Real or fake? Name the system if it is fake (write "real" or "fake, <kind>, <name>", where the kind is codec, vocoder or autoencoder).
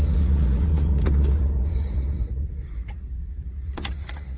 fake, vocoder, Vocos